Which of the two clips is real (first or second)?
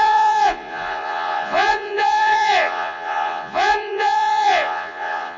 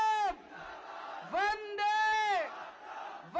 second